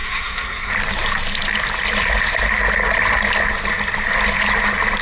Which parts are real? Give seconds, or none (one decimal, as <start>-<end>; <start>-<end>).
0.7-5.0